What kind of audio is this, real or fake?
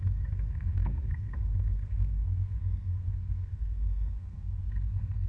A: fake